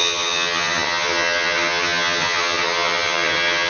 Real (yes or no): no